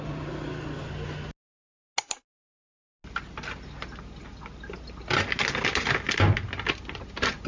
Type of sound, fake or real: real